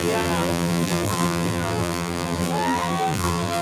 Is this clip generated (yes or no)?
yes